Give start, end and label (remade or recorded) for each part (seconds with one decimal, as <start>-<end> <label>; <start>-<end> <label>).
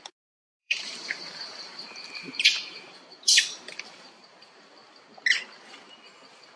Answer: 0.0-0.6 recorded; 0.6-4.6 remade; 4.6-6.6 recorded